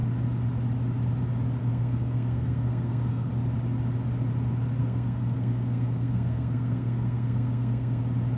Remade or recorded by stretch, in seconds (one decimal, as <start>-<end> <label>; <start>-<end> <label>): 0.0-1.6 recorded; 1.6-3.3 remade; 3.3-4.8 recorded; 4.8-8.0 remade; 8.0-8.4 recorded